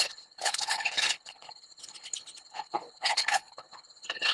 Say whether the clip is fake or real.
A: fake